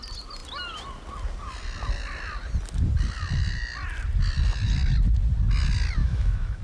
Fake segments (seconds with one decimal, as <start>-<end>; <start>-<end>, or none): 6.0-6.6